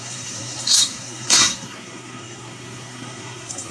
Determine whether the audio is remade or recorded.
remade